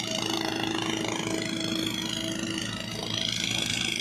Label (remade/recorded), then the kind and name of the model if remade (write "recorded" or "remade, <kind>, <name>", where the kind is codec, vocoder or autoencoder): recorded